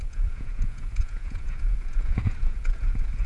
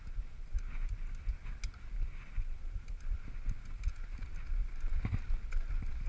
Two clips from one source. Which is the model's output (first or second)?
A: first